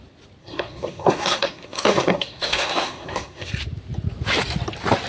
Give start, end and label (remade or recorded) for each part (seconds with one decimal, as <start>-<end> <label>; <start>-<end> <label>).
0.0-0.4 recorded; 0.4-3.5 remade; 3.5-5.1 recorded

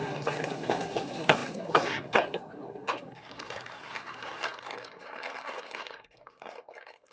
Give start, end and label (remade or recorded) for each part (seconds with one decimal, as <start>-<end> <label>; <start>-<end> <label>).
0.0-7.1 remade

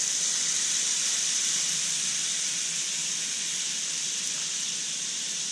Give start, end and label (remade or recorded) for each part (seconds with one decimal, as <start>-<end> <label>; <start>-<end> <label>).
0.0-5.5 recorded

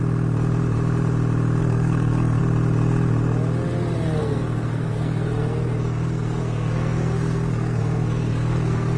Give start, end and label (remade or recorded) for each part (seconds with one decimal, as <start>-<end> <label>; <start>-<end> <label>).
0.0-1.6 recorded; 1.6-2.4 remade; 2.4-4.2 recorded; 4.2-9.0 remade

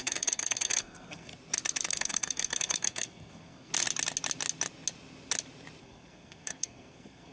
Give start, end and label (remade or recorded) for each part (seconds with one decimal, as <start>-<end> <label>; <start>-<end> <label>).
0.0-1.3 remade; 1.3-1.9 recorded; 1.9-3.7 remade; 3.7-5.8 recorded; 5.8-7.3 remade

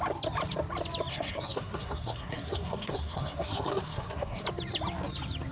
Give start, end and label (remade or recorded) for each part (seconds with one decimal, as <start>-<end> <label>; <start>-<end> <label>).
0.0-1.1 recorded; 1.1-4.4 remade; 4.4-5.5 recorded

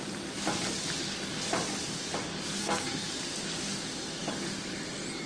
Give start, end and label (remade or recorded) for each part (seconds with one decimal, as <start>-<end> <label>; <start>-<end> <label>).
0.0-2.6 recorded; 2.6-3.1 remade; 3.1-5.3 recorded